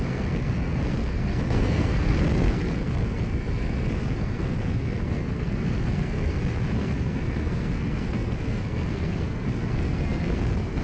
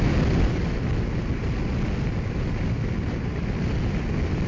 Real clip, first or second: second